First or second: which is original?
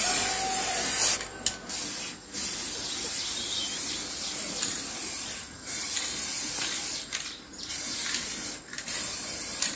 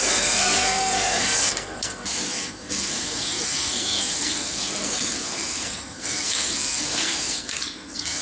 first